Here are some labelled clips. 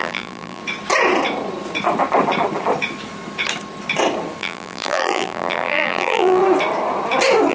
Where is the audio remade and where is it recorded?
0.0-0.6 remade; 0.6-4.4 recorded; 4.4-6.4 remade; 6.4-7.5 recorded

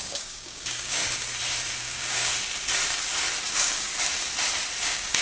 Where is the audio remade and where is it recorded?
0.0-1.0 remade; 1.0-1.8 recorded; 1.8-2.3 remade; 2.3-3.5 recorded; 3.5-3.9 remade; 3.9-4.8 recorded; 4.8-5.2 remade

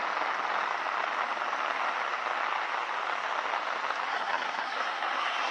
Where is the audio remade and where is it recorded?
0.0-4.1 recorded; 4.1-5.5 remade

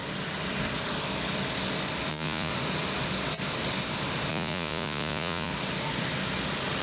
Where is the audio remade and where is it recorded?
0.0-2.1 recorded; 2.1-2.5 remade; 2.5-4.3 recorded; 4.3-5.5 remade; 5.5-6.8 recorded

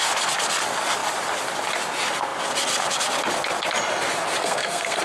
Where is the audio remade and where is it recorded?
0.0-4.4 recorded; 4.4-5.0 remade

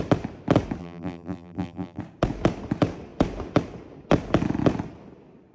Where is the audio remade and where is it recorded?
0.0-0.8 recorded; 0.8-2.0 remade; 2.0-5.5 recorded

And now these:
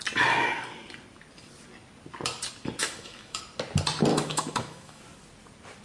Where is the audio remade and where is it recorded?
0.0-2.8 recorded; 2.8-3.4 remade; 3.4-4.1 recorded; 4.1-5.0 remade; 5.0-5.8 recorded

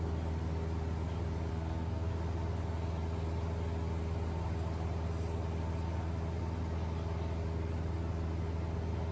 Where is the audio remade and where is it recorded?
0.0-1.5 recorded; 1.5-2.1 remade; 2.1-9.1 recorded